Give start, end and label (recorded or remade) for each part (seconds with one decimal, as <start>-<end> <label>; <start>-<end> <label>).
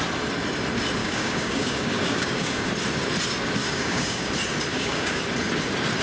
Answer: 0.0-1.0 recorded; 1.0-2.7 remade; 2.7-3.6 recorded; 3.6-4.3 remade; 4.3-4.7 recorded; 4.7-5.2 remade; 5.2-6.0 recorded